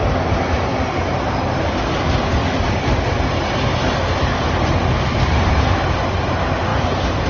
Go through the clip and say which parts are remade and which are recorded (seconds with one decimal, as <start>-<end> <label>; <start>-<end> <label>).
0.0-0.7 recorded; 0.7-1.2 remade; 1.2-2.4 recorded; 2.4-3.0 remade; 3.0-6.7 recorded; 6.7-7.3 remade